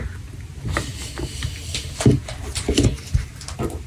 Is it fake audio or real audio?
real